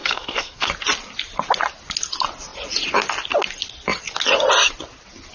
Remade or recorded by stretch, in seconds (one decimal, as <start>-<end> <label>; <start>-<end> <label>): 0.0-0.7 remade; 0.7-5.3 recorded